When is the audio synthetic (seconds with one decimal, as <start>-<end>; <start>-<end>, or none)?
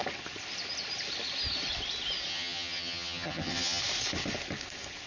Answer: 2.3-3.8